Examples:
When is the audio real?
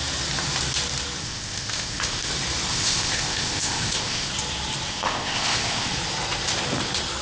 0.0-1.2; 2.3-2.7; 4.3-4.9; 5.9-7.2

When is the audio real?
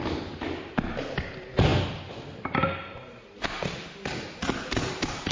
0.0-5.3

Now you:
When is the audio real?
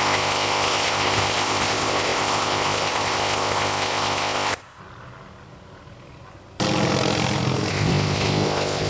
4.8-7.7